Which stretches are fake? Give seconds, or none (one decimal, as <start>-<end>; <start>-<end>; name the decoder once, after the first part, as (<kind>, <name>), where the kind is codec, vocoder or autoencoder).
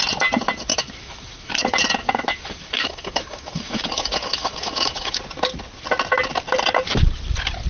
0.7-1.5 (autoencoder, DAC-VAE); 2.0-5.2